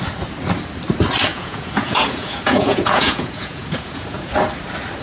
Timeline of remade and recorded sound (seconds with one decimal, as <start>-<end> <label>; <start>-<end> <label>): 0.0-1.3 recorded; 1.3-4.3 remade; 4.3-5.0 recorded